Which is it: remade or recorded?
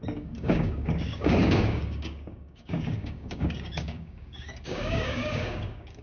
remade